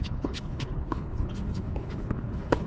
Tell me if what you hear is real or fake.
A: fake